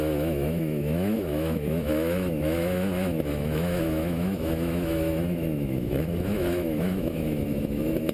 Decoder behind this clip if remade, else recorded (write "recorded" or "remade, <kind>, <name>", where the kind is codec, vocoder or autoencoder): remade, autoencoder, DAC-VAE